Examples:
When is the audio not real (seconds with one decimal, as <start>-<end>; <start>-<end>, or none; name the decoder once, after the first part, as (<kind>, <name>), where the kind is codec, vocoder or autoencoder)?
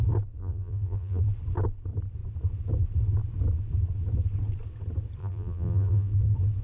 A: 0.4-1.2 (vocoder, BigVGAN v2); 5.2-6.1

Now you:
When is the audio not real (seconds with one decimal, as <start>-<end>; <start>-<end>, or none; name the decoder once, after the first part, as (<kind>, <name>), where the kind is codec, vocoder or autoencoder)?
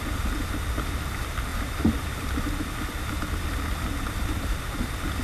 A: 1.5-2.2 (vocoder, BigVGAN v2)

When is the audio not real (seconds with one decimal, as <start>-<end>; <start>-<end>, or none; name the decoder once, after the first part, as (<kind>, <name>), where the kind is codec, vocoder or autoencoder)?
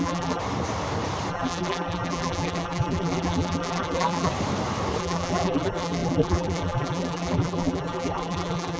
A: 0.0-0.4 (vocoder, BigVGAN v2); 1.3-4.3; 5.0-8.8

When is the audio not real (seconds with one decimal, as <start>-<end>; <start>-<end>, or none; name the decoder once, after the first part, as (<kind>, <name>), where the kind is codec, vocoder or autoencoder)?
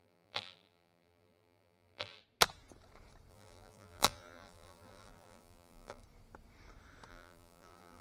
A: 0.0-2.2 (vocoder, BigVGAN v2); 3.3-6.0; 7.1-8.0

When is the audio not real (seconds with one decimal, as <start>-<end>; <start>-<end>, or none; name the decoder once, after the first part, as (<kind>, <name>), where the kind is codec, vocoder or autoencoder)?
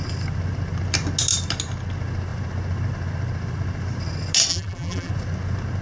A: 4.5-5.1 (vocoder, BigVGAN v2)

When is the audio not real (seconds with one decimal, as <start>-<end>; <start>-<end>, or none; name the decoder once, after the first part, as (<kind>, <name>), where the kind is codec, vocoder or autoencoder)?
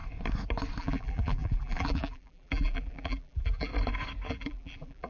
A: 0.8-3.7 (vocoder, BigVGAN v2); 4.3-5.1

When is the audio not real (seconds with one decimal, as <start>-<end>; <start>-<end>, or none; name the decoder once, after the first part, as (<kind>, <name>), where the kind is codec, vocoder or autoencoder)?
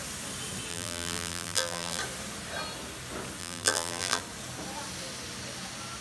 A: 0.7-2.0 (vocoder, BigVGAN v2); 3.4-4.2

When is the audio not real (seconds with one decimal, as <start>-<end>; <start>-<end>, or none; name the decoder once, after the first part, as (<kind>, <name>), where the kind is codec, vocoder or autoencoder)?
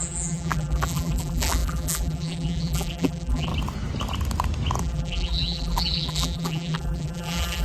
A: 0.0-3.5 (vocoder, BigVGAN v2); 4.8-7.6